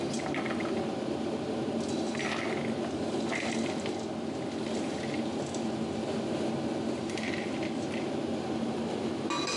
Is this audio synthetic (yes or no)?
no